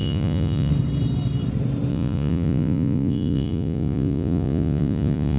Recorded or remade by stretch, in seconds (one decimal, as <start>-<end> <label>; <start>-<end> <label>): 0.0-0.7 remade; 0.7-1.9 recorded; 1.9-5.4 remade

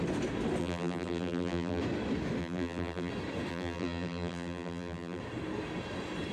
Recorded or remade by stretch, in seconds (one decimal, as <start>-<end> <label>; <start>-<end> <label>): 0.0-0.6 recorded; 0.6-1.8 remade; 1.8-2.4 recorded; 2.4-3.1 remade; 3.1-3.5 recorded; 3.5-5.2 remade; 5.2-6.3 recorded

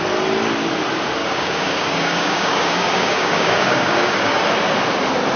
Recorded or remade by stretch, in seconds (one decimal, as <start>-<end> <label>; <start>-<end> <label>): 0.0-1.2 recorded; 1.2-4.4 remade; 4.4-5.4 recorded

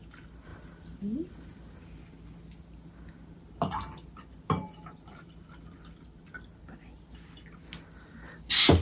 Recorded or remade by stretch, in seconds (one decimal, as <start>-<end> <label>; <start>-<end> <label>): 0.0-8.8 recorded

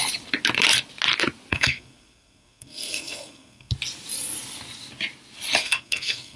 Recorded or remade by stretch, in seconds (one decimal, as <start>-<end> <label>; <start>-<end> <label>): 0.0-1.5 recorded; 1.5-3.7 remade; 3.7-5.6 recorded; 5.6-6.4 remade

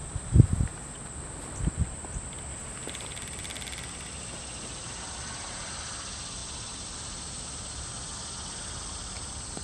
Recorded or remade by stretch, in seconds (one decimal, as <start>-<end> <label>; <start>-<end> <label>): 0.0-9.6 recorded

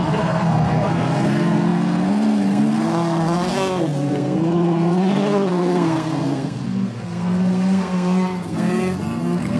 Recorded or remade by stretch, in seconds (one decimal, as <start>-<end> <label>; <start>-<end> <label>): 0.0-9.6 remade

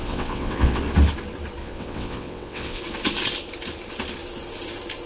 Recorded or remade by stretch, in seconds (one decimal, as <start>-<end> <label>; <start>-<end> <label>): 0.0-0.8 remade; 0.8-1.6 recorded; 1.6-2.8 remade; 2.8-5.1 recorded